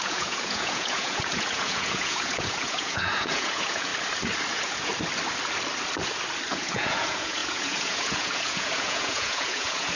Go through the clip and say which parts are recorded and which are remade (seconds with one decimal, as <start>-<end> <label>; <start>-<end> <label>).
0.0-3.9 remade; 3.9-4.5 recorded; 4.5-4.9 remade; 4.9-6.5 recorded; 6.5-10.0 remade